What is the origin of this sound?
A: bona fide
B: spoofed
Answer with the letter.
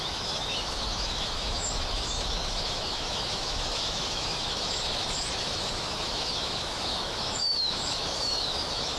B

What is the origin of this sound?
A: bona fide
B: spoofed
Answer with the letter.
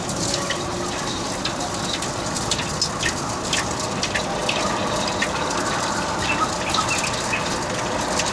A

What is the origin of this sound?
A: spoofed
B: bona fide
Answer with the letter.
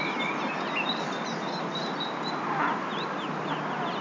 B